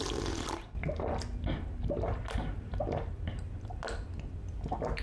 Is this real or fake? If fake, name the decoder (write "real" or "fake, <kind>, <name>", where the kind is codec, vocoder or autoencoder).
real